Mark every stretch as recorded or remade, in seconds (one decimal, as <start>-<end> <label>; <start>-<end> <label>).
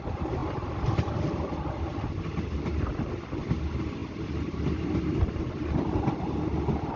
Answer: 0.0-7.0 recorded